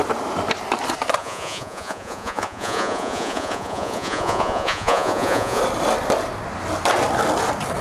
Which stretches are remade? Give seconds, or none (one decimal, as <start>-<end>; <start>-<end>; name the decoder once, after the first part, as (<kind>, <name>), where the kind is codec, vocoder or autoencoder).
1.2-5.6 (vocoder, Vocos)